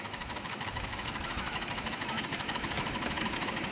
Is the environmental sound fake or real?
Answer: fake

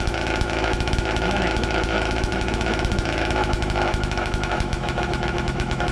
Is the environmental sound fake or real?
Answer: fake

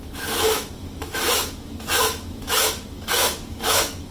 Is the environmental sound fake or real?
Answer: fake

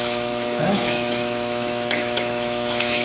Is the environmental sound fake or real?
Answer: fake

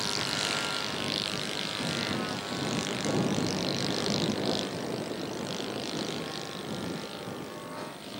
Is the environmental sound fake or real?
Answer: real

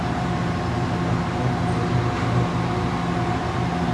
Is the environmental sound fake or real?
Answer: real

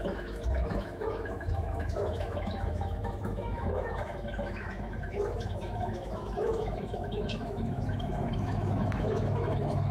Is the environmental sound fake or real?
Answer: fake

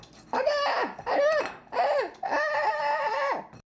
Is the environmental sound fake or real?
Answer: real